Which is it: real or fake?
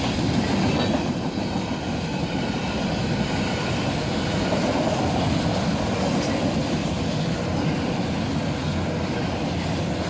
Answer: real